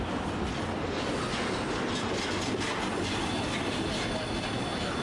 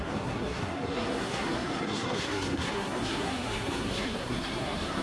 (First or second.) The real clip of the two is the first